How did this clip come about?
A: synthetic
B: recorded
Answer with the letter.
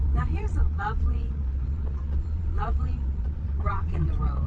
A